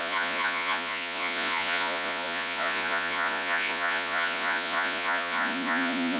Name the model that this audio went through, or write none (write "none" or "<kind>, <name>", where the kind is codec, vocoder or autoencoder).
vocoder, Vocos